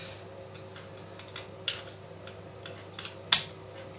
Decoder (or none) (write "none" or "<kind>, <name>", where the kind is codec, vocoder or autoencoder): none